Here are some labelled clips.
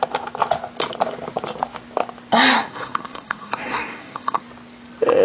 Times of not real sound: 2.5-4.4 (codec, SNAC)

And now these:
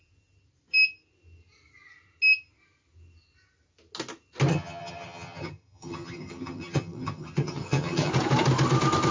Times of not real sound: 4.5-8.1 (vocoder, HiFi-GAN)

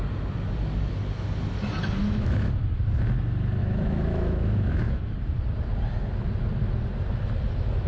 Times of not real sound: 2.0-2.5 (autoencoder, DAC-VAE); 3.6-5.0

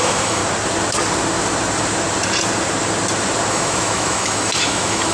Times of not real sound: 0.0-0.4 (autoencoder, DAC-VAE); 3.5-5.1

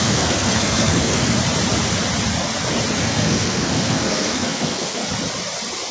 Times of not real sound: 0.0-1.4 (codec, SNAC); 3.0-5.0

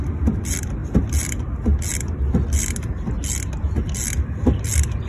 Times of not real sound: none